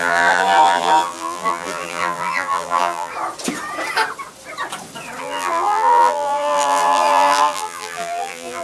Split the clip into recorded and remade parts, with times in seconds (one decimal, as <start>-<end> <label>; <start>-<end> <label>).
0.0-3.1 remade; 3.1-5.2 recorded; 5.2-8.6 remade